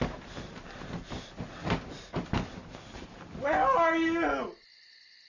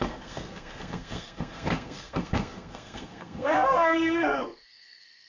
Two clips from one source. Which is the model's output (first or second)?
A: second